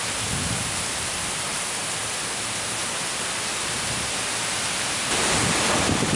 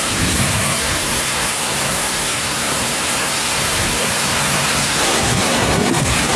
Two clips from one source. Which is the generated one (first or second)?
second